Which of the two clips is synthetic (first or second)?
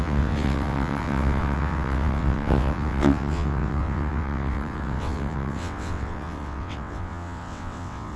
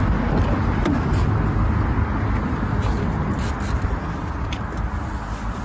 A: first